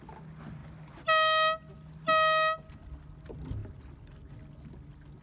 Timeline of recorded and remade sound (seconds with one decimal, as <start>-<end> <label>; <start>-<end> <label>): 0.0-5.2 recorded